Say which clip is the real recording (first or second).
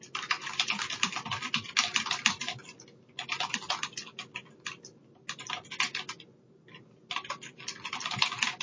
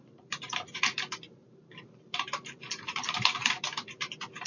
first